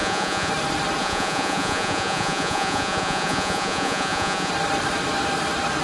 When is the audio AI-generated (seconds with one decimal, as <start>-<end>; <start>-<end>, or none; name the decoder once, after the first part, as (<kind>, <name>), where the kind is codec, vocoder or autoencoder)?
0.0-0.5 (vocoder, Vocos); 1.0-4.5